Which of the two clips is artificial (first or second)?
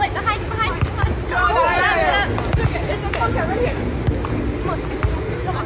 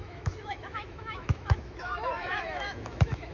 second